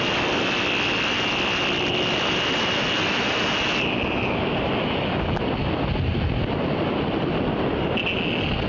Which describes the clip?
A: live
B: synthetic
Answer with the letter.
A